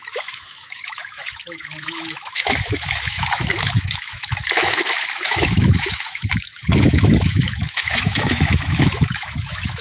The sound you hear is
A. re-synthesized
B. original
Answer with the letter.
A